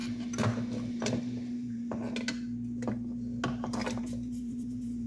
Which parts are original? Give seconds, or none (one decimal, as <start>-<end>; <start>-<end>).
0.0-0.9; 2.0-4.0